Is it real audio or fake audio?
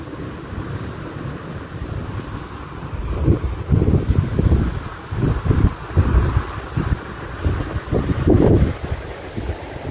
real